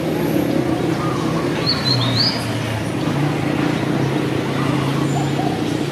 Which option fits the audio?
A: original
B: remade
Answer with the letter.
A